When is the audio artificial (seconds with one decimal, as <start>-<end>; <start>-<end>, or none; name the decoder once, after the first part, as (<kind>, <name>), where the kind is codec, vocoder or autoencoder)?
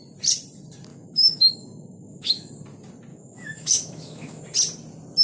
0.9-2.5 (autoencoder, DAC-VAE); 3.1-4.4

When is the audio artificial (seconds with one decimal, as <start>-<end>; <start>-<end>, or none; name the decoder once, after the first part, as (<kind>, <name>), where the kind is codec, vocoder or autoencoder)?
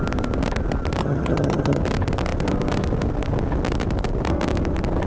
1.0-1.8 (vocoder, HiFi-GAN)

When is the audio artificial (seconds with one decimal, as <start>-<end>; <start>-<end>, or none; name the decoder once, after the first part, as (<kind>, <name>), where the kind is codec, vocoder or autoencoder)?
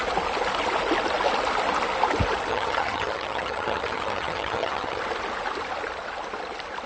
2.5-5.0 (vocoder, HiFi-GAN)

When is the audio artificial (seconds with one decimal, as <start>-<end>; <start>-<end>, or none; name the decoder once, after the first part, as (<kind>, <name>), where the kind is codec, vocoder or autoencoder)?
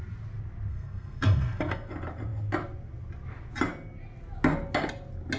0.7-1.9 (codec, SNAC)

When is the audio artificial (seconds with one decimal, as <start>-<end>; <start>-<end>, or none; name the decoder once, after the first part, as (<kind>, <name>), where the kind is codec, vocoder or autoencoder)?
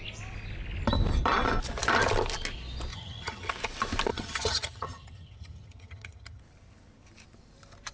2.9-3.5 (vocoder, HiFi-GAN); 4.1-6.4